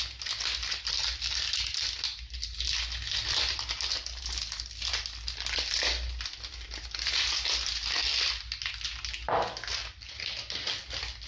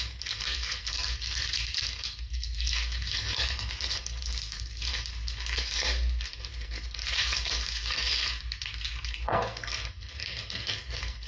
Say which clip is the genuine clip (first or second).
first